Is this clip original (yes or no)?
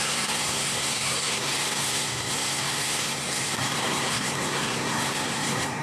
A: no